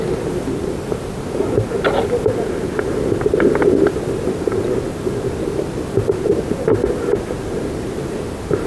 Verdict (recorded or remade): recorded